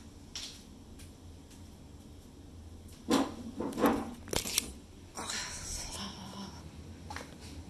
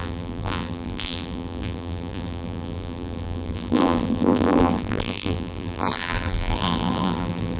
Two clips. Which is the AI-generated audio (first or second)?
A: second